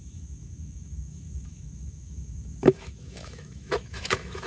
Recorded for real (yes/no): no